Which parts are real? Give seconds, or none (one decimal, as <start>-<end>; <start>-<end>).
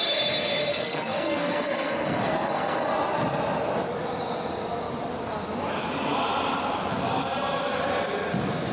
0.0-0.7; 2.9-8.7